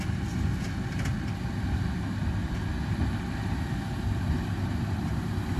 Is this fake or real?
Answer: real